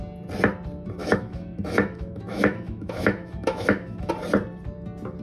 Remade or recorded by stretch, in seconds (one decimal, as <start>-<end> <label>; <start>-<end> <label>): 0.0-1.0 recorded; 1.0-4.1 remade; 4.1-5.2 recorded